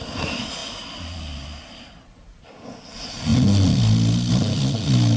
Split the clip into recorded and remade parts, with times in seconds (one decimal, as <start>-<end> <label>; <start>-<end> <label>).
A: 0.0-5.2 recorded